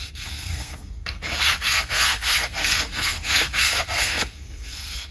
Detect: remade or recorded remade